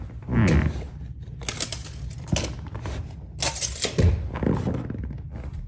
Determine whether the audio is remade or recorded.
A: recorded